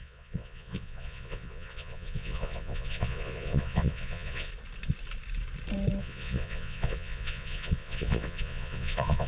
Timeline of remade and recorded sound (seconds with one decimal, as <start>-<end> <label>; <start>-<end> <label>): 0.0-4.5 remade; 4.5-6.0 recorded; 6.0-9.3 remade